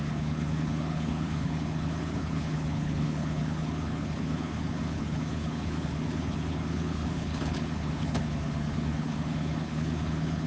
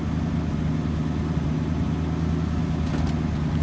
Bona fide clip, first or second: second